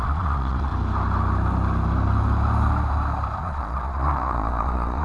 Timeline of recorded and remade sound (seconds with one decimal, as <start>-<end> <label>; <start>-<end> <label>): 0.0-0.7 remade; 0.7-3.4 recorded; 3.4-5.0 remade

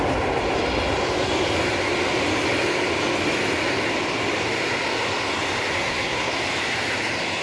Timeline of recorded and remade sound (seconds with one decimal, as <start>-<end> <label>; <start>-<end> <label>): 0.0-5.7 recorded; 5.7-6.3 remade; 6.3-7.4 recorded

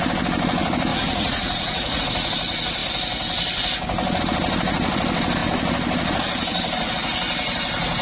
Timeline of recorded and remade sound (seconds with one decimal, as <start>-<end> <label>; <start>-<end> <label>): 0.0-0.9 recorded; 0.9-2.0 remade; 2.0-8.0 recorded

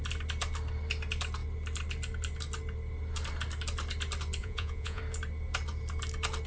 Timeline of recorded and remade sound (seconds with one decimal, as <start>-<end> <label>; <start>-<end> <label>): 0.0-4.4 recorded; 4.4-5.0 remade; 5.0-6.5 recorded

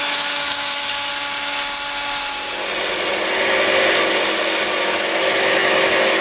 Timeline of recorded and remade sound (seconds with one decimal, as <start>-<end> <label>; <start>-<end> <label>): 0.0-1.1 remade; 1.1-4.8 recorded; 4.8-6.2 remade

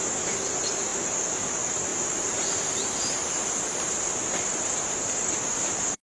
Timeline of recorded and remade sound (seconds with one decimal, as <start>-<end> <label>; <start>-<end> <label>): 0.0-6.1 recorded

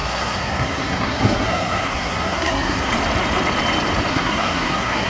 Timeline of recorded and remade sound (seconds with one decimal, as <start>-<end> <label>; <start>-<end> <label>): 0.0-2.9 remade; 2.9-4.1 recorded; 4.1-5.1 remade